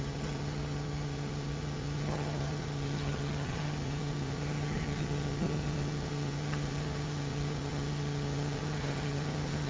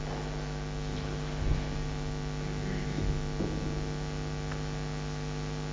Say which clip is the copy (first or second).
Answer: first